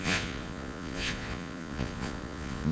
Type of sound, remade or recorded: remade